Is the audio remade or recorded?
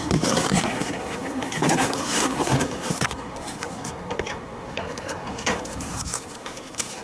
remade